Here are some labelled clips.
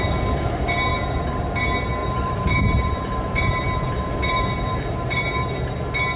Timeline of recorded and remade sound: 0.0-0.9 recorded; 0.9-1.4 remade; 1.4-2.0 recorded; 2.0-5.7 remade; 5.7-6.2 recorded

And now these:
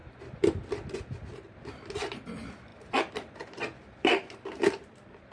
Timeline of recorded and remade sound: 0.0-0.9 remade; 0.9-2.7 recorded; 2.7-4.7 remade; 4.7-5.3 recorded

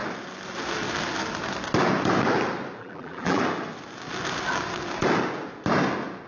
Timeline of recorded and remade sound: 0.0-2.8 recorded; 2.8-3.4 remade; 3.4-6.3 recorded

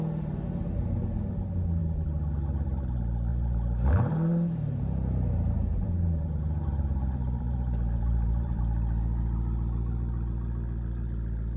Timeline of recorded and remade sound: 0.0-3.3 recorded; 3.3-8.6 remade; 8.6-11.6 recorded